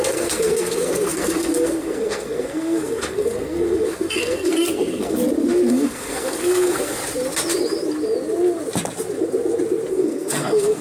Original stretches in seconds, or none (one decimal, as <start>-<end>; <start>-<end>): 5.2-5.7; 7.0-9.9